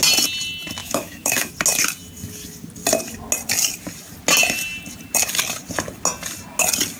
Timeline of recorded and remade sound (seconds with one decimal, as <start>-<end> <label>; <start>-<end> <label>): 0.0-0.8 recorded; 0.8-1.5 remade; 1.5-7.0 recorded